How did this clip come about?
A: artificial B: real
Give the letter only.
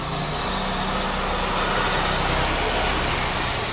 B